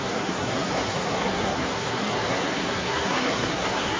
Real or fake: fake